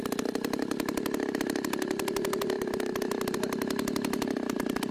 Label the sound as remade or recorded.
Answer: recorded